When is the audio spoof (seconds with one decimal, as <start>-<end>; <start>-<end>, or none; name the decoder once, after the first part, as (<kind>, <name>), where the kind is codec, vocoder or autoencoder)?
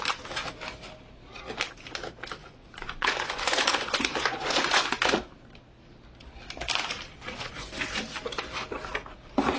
2.4-5.1 (vocoder, Vocos); 7.1-7.9